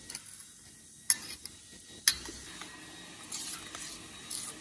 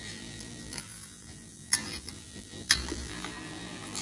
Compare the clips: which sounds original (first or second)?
first